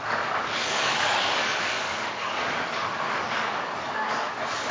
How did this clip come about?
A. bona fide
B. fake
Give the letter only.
B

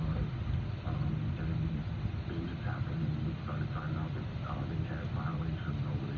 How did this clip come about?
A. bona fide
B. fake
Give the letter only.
A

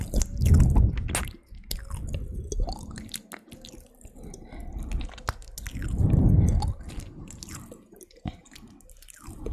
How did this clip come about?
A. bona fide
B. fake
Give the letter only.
A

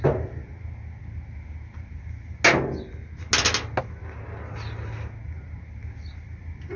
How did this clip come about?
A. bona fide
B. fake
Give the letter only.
A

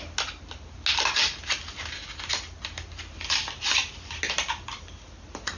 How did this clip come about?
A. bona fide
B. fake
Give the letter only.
A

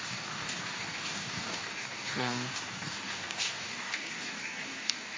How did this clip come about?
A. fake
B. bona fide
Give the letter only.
A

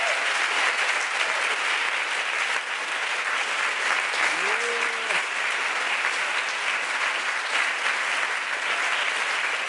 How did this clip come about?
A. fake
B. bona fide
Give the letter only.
B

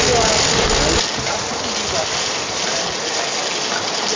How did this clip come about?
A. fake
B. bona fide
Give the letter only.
B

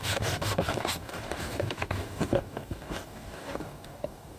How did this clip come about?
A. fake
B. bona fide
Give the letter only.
A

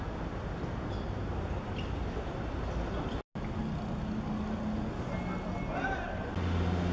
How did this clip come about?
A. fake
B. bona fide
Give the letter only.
B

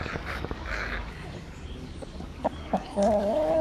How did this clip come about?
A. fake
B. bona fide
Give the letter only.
A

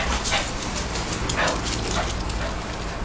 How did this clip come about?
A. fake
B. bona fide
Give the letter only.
B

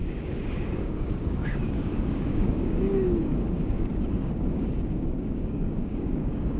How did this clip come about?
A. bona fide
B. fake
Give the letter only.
B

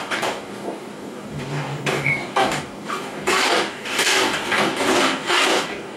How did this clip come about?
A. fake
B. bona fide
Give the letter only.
A